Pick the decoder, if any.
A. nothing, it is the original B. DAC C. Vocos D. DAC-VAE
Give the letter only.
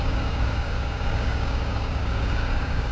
B